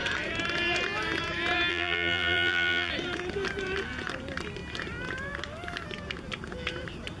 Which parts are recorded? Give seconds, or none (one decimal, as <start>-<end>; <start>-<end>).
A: 0.0-1.7; 2.9-7.2